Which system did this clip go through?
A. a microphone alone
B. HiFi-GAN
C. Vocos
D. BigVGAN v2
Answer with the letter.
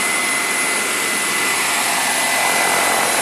A